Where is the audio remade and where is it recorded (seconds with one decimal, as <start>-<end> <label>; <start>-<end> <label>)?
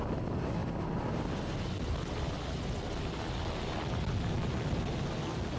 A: 0.0-5.6 recorded